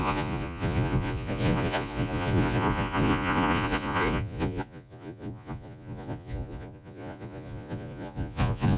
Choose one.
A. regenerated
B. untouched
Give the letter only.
A